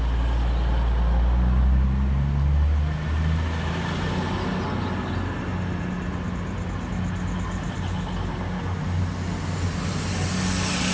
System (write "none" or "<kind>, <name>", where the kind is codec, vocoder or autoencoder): none